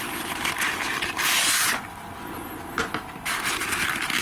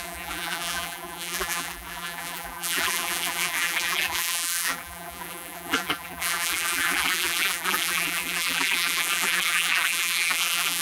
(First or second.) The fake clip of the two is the second